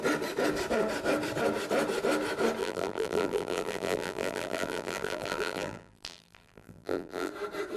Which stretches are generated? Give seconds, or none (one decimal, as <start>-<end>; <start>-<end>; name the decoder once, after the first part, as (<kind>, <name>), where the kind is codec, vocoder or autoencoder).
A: 2.6-7.3 (vocoder, BigVGAN v2)